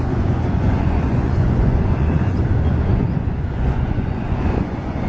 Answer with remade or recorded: remade